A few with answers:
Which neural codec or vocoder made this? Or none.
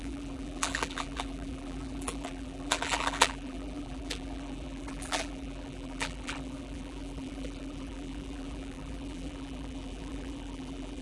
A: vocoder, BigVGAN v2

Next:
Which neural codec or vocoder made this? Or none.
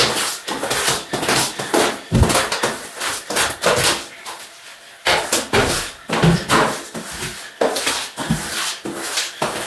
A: none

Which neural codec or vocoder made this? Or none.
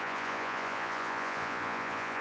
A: vocoder, Vocos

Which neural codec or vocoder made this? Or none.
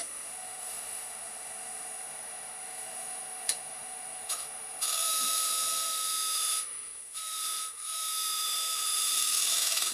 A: autoencoder, DAC-VAE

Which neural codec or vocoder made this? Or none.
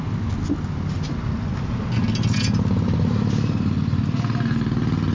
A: none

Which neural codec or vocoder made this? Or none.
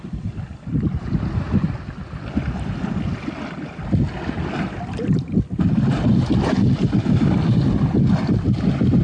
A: none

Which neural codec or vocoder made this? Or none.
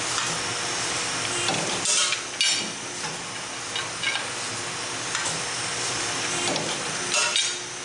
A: none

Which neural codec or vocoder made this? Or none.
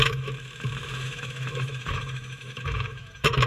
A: autoencoder, DAC-VAE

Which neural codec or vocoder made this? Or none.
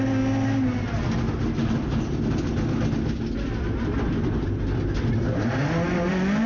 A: none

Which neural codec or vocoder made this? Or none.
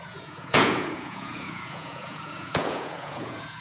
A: vocoder, Vocos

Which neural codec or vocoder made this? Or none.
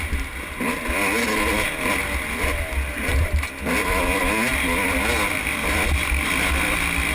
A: none